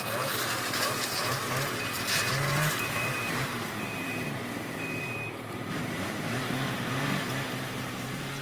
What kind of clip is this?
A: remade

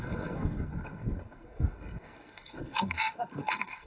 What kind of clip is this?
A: remade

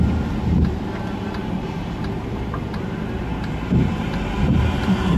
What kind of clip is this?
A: remade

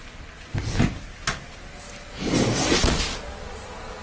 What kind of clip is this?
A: recorded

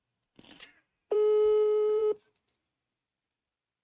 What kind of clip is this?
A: remade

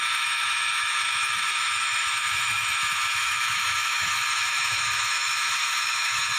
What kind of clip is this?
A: remade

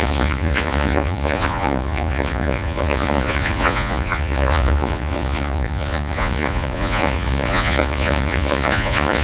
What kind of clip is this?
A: remade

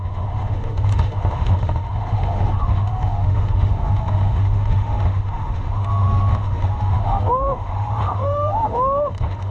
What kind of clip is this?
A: remade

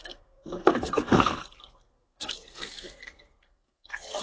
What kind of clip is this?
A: remade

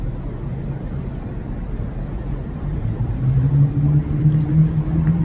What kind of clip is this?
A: recorded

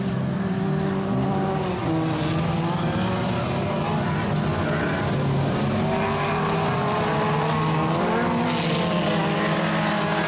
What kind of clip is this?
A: recorded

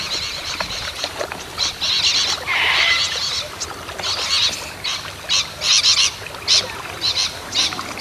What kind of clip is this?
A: recorded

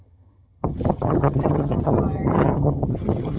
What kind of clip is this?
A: remade